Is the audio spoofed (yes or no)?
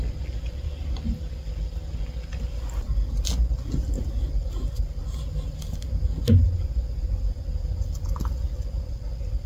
no